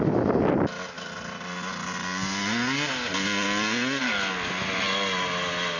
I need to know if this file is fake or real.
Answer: real